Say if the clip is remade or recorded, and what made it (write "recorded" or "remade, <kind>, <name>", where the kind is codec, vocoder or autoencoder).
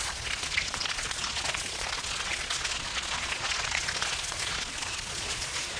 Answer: remade, vocoder, Vocos